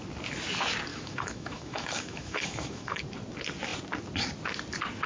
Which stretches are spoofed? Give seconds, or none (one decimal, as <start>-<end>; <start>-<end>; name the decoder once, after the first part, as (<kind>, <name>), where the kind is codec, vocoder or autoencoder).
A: 0.9-3.0 (autoencoder, DAC-VAE)